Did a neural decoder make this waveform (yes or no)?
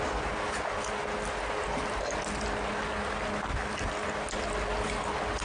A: no